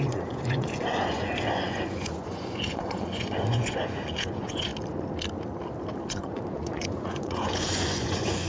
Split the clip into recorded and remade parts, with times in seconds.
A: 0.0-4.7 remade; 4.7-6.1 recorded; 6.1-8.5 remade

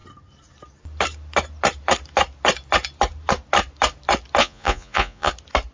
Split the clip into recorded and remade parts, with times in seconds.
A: 0.0-4.4 recorded; 4.4-5.3 remade; 5.3-5.7 recorded

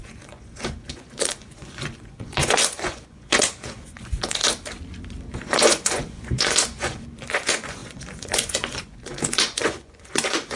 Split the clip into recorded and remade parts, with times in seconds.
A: 0.0-4.4 remade; 4.4-5.4 recorded; 5.4-10.6 remade

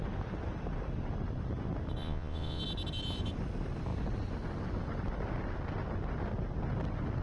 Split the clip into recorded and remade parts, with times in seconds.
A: 0.0-2.0 recorded; 2.0-2.6 remade; 2.6-7.2 recorded

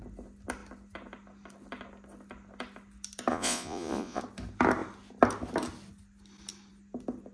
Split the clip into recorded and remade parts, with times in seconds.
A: 0.0-3.3 recorded; 3.3-4.2 remade; 4.2-7.3 recorded

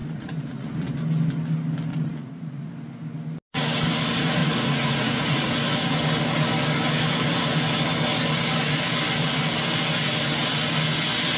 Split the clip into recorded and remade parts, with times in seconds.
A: 0.0-0.9 remade; 0.9-1.9 recorded; 1.9-2.7 remade; 2.7-4.4 recorded; 4.4-5.5 remade; 5.5-11.4 recorded